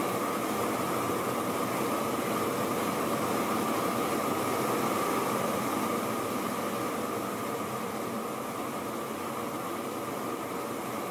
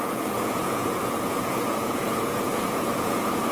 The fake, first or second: second